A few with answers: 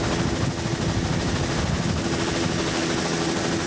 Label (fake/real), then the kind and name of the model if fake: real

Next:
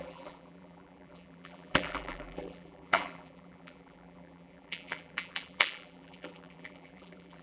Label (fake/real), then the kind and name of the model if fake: fake, vocoder, BigVGAN v2